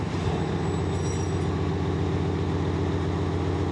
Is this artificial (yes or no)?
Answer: no